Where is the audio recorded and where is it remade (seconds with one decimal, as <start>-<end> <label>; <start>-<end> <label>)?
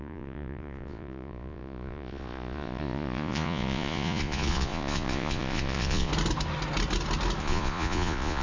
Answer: 0.0-6.1 remade; 6.1-7.4 recorded; 7.4-8.4 remade